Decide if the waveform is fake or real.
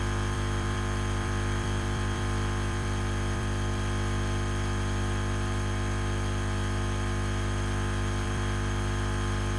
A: fake